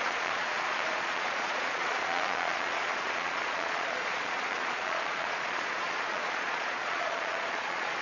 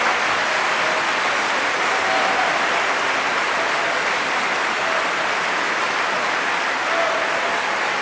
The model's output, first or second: first